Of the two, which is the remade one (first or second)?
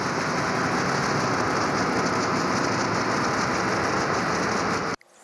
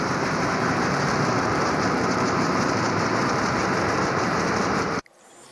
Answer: second